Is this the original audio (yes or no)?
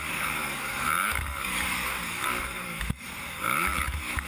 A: no